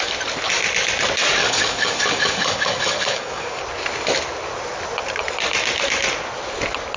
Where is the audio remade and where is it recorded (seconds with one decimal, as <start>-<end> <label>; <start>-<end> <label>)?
0.0-1.4 recorded; 1.4-3.6 remade; 3.6-7.0 recorded